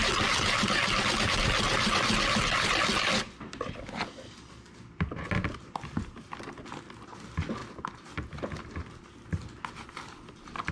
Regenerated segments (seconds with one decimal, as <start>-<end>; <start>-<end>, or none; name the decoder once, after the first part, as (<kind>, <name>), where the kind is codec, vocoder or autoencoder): none